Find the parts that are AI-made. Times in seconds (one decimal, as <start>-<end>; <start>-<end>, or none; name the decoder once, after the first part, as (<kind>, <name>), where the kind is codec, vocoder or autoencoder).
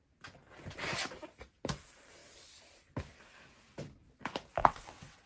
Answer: 4.6-5.3 (vocoder, WaveNeXt)